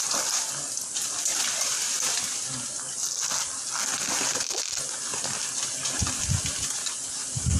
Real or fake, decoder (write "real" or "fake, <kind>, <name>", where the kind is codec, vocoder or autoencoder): real